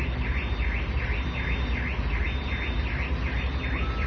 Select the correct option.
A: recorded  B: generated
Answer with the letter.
A